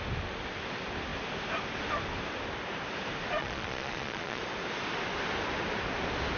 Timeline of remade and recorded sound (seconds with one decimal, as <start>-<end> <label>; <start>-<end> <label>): 0.0-3.4 recorded; 3.4-4.4 remade; 4.4-6.4 recorded